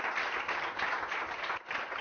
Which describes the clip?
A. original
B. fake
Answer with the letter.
A